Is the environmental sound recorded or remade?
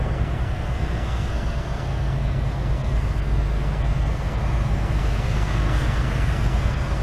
remade